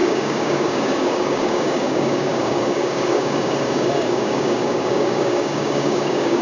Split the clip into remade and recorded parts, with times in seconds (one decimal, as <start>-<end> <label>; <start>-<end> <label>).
0.0-6.4 remade